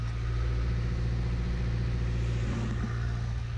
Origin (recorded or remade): recorded